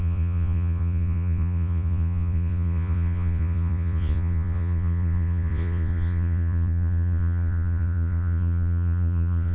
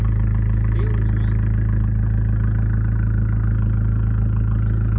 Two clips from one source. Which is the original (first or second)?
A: second